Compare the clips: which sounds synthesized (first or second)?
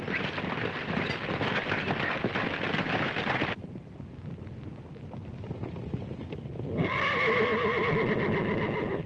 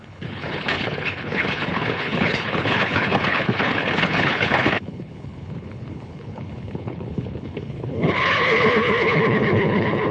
second